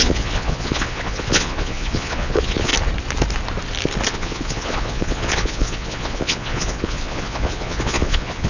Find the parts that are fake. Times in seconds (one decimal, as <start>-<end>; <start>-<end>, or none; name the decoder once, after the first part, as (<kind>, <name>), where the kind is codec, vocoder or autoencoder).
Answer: 0.0-2.7 (vocoder, Vocos); 4.1-8.5